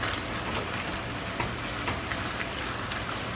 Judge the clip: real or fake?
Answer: real